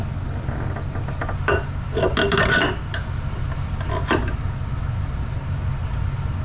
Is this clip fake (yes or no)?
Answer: no